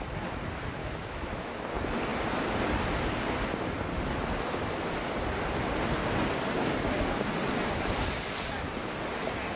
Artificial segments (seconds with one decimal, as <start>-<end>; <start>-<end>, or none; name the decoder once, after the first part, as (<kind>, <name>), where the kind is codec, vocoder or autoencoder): 0.8-1.6 (autoencoder, DAC-VAE)